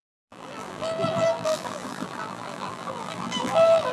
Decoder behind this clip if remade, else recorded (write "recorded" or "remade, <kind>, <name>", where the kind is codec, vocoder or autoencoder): remade, vocoder, BigVGAN v2